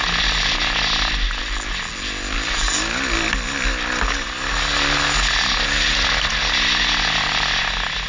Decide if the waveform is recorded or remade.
recorded